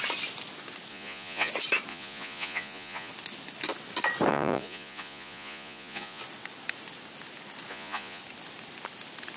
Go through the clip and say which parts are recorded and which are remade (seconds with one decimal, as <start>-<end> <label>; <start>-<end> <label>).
0.0-0.9 recorded; 0.9-1.5 remade; 1.5-1.9 recorded; 1.9-3.1 remade; 3.1-4.3 recorded; 4.3-6.2 remade; 6.2-7.7 recorded; 7.7-8.2 remade; 8.2-9.4 recorded